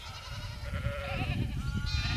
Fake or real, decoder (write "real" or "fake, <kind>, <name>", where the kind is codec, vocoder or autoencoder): real